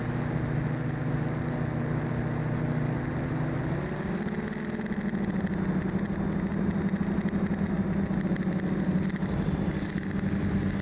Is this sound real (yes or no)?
yes